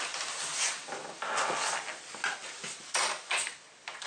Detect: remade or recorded recorded